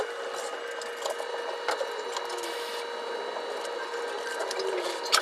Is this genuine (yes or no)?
yes